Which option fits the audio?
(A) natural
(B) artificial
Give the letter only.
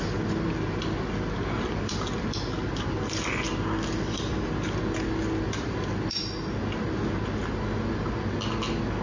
A